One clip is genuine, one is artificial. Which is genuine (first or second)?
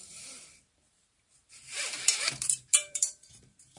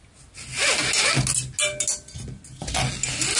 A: second